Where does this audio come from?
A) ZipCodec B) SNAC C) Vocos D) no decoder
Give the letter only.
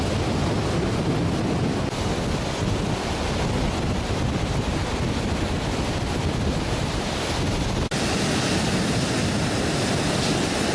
D